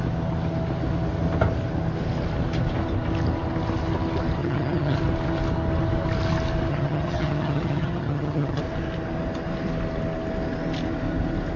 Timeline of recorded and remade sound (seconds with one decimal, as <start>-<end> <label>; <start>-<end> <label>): 0.0-4.4 recorded; 4.4-5.0 remade; 5.0-6.7 recorded; 6.7-8.6 remade; 8.6-11.6 recorded